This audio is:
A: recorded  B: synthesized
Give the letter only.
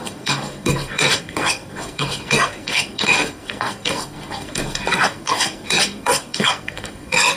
B